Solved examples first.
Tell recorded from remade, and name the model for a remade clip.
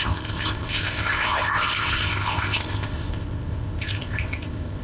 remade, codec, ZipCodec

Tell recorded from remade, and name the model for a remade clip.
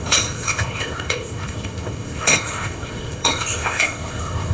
remade, codec, ZipCodec